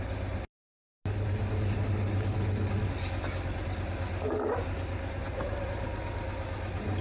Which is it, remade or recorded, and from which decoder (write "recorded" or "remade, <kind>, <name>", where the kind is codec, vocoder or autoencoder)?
recorded